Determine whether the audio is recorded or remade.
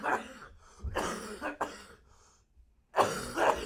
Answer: recorded